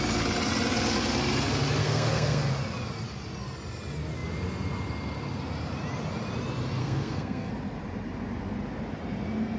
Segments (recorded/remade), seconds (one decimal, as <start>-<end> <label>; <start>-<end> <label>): 0.0-1.8 recorded; 1.8-2.5 remade; 2.5-6.8 recorded; 6.8-7.5 remade; 7.5-9.6 recorded